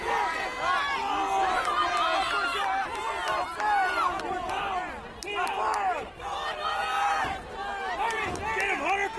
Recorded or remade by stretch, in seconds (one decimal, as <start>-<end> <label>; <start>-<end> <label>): 0.0-9.2 recorded